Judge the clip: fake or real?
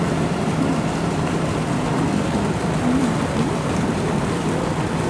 fake